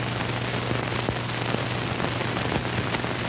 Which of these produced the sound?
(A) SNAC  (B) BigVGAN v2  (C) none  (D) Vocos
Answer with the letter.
C